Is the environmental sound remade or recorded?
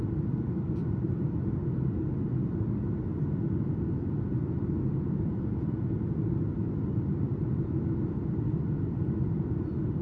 recorded